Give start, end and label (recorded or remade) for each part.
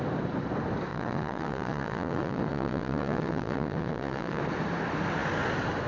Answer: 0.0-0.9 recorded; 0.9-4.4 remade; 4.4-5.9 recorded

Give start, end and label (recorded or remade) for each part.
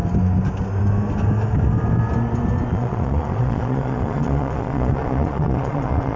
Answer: 0.0-2.7 recorded; 2.7-6.2 remade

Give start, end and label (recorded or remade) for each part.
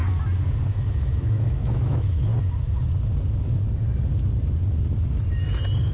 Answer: 0.0-0.7 recorded; 0.7-2.3 remade; 2.3-5.9 recorded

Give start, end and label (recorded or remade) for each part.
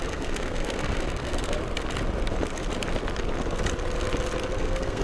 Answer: 0.0-1.6 remade; 1.6-4.6 recorded; 4.6-5.0 remade